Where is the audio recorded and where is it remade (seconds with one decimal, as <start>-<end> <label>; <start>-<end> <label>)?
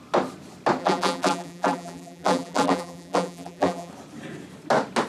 0.0-0.8 recorded; 0.8-3.9 remade; 3.9-5.1 recorded